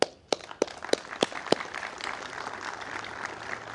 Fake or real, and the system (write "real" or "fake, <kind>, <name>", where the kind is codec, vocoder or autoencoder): real